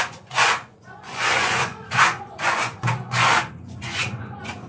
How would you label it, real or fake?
fake